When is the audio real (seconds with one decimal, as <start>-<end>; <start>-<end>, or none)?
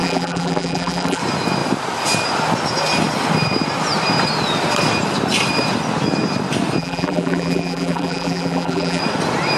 1.2-6.8; 9.0-9.6